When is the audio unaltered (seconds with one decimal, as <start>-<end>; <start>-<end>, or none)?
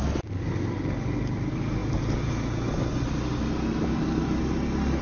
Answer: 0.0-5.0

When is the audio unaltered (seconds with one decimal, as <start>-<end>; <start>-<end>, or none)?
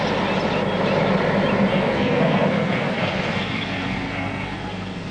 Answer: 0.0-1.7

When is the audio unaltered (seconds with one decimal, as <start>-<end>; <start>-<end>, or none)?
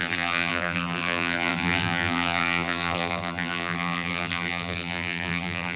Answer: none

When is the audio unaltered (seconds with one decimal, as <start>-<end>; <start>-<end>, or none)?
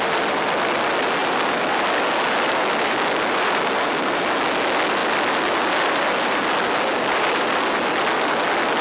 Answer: 0.0-8.8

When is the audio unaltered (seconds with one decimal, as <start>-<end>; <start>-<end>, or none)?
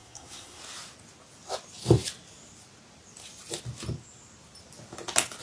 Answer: 0.6-5.4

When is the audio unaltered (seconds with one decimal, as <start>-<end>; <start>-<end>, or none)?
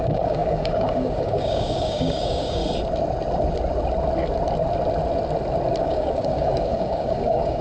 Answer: 2.6-5.8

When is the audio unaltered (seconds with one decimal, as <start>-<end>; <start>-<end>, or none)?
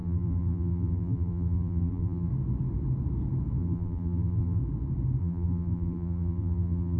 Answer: 2.3-3.6; 4.6-5.2